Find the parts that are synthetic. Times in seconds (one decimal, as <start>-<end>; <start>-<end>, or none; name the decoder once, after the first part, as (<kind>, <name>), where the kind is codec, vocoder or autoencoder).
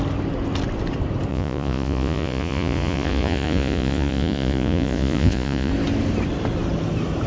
1.3-5.7 (vocoder, Vocos)